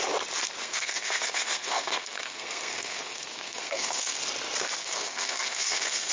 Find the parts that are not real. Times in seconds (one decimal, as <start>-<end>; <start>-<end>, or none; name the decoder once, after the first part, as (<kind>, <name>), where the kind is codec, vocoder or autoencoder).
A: 0.6-4.2 (codec, SNAC); 4.8-6.1